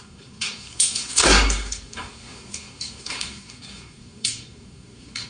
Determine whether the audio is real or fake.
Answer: fake